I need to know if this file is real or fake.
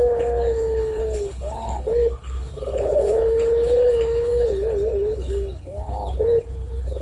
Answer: fake